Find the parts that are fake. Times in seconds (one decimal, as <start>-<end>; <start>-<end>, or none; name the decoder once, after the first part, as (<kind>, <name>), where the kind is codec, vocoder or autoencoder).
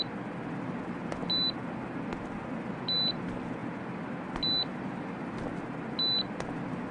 none